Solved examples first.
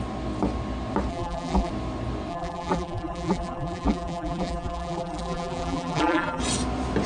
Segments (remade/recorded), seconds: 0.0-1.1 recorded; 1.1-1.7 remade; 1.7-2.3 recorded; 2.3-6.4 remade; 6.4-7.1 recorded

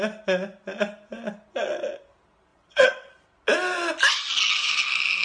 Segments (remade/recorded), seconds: 0.0-2.5 recorded; 2.5-3.1 remade; 3.1-5.2 recorded